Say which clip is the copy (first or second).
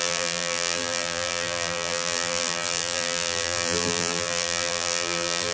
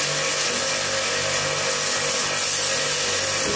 first